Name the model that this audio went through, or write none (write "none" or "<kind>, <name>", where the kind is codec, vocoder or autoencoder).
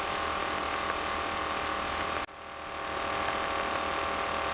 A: none